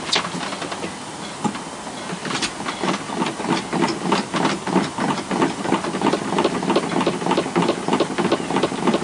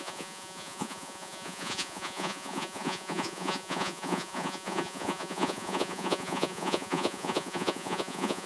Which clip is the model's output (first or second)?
second